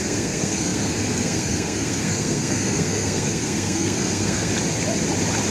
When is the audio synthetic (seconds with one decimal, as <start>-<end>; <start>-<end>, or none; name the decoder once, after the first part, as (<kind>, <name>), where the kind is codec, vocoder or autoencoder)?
0.0-4.5 (codec, SNAC)